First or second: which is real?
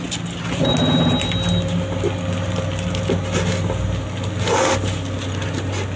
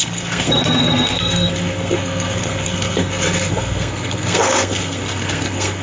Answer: first